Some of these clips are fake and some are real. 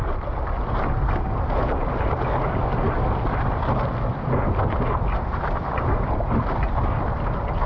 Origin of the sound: real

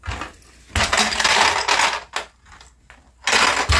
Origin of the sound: real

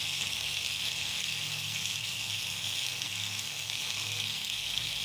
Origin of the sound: fake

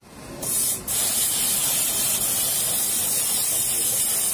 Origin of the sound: real